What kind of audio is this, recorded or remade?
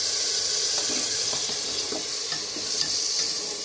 recorded